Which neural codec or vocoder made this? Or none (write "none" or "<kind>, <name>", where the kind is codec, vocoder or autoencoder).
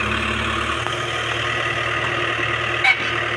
none